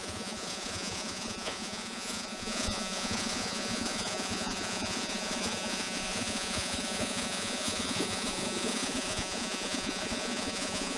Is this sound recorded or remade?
remade